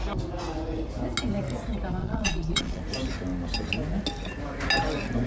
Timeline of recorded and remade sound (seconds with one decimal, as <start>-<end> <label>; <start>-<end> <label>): 0.0-2.0 recorded; 2.0-2.8 remade; 2.8-5.3 recorded